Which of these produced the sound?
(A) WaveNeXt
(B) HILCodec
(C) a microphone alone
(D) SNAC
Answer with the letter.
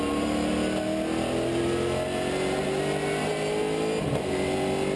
C